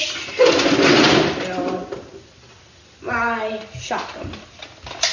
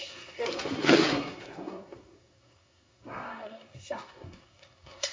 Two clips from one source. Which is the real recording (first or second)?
first